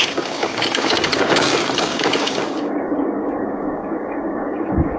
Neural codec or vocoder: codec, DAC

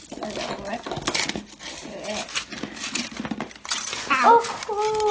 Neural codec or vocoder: none